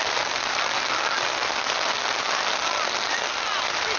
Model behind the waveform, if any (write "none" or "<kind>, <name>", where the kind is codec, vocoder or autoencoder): none